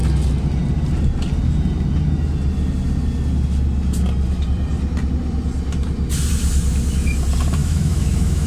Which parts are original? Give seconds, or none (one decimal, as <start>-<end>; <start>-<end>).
0.0-7.6